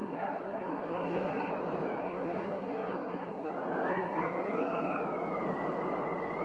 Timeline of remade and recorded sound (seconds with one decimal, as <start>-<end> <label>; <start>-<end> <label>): 0.0-1.5 remade; 1.5-2.0 recorded; 2.0-3.5 remade; 3.5-3.9 recorded; 3.9-5.0 remade; 5.0-6.4 recorded